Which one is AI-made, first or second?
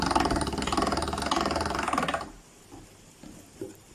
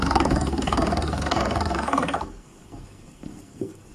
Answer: second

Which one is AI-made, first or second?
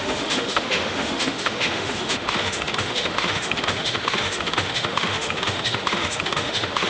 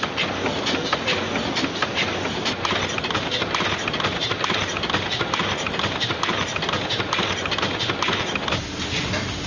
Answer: first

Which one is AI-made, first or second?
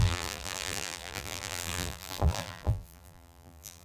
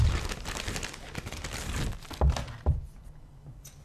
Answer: first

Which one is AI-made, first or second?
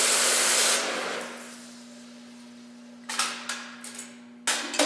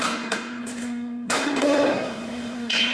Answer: second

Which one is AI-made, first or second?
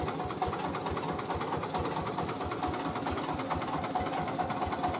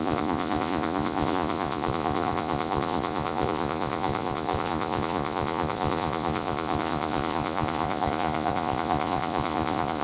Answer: second